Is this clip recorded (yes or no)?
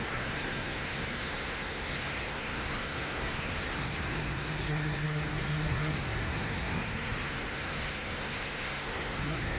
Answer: no